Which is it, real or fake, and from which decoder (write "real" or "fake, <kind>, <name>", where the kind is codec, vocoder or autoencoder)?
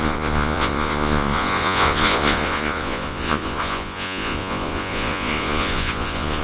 fake, vocoder, Vocos